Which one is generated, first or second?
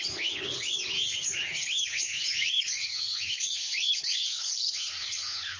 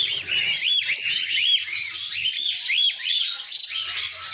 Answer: first